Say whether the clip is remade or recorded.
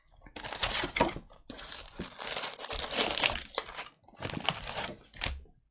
recorded